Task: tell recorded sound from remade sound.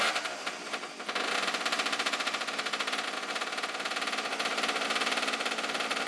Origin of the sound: recorded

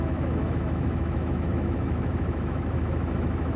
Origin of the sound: remade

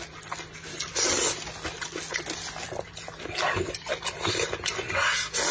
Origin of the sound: recorded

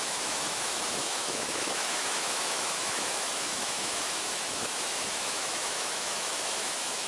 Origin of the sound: remade